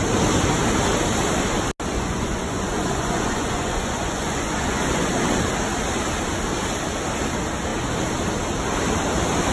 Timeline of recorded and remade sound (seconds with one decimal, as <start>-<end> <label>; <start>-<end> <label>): 0.0-1.9 recorded; 1.9-5.1 remade; 5.1-9.5 recorded